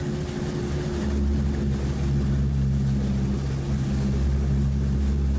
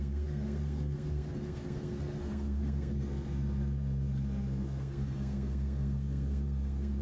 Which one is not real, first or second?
second